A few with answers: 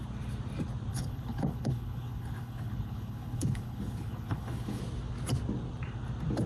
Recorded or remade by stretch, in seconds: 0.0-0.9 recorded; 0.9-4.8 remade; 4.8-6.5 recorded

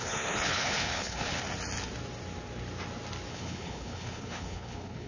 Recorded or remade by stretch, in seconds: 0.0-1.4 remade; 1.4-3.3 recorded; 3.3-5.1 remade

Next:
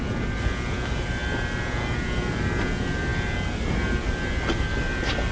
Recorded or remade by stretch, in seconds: 0.0-5.3 recorded